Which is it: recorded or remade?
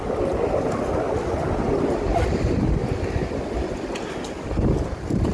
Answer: recorded